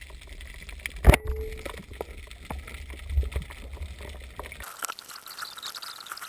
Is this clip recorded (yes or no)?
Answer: yes